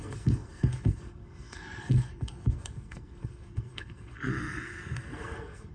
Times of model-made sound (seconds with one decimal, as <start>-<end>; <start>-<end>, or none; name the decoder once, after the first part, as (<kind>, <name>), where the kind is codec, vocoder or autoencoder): 0.0-5.7 (codec, SNAC)